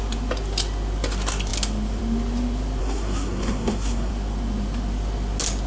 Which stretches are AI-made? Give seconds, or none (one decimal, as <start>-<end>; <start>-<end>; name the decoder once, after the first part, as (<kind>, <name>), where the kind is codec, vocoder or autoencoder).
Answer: 2.8-4.1 (codec, SNAC)